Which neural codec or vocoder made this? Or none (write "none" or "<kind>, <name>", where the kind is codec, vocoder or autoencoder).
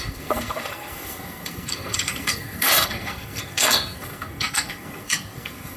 codec, SNAC